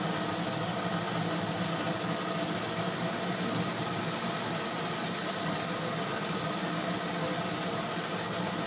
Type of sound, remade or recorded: recorded